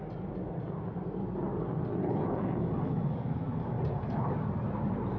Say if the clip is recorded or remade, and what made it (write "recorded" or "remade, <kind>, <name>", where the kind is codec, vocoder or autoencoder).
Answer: recorded